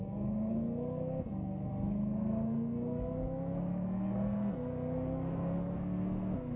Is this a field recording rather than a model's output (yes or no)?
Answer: no